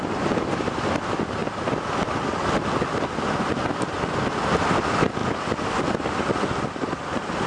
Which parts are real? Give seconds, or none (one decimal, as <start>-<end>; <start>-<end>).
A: 0.0-7.5